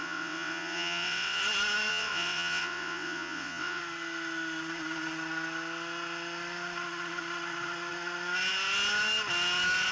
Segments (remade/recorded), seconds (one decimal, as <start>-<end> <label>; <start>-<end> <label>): 0.0-1.4 remade; 1.4-1.9 recorded; 1.9-3.8 remade; 3.8-9.9 recorded